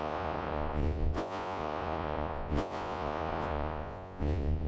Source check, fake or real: fake